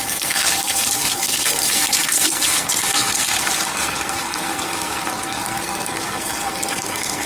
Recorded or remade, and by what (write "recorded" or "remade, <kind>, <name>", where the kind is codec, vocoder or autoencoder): remade, codec, SNAC